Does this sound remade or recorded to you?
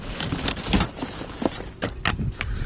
recorded